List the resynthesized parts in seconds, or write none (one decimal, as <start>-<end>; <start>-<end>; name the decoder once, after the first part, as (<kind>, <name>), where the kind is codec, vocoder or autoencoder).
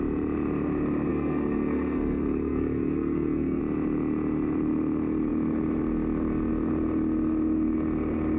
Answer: 1.1-3.6 (codec, SNAC)